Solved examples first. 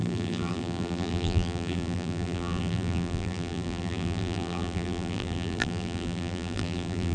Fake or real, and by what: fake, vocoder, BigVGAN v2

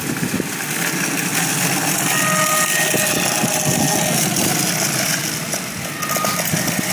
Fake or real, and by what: real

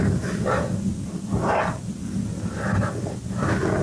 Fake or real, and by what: real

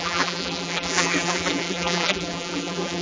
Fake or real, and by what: fake, vocoder, BigVGAN v2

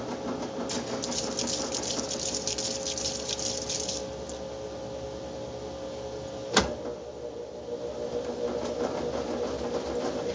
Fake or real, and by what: real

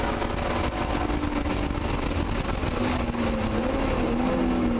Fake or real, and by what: real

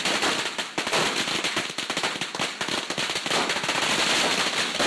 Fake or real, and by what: real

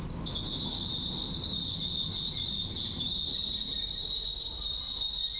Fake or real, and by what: real